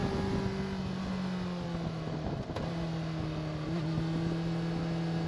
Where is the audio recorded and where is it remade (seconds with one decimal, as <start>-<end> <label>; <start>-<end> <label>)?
0.0-5.3 recorded